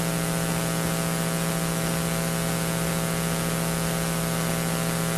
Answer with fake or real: real